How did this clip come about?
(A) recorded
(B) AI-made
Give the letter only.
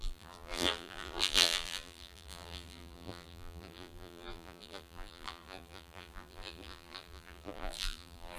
B